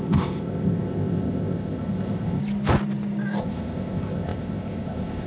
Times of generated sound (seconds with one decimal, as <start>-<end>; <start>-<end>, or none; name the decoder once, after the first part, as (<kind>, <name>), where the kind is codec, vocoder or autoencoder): 0.0-2.4 (codec, ZipCodec); 3.4-5.3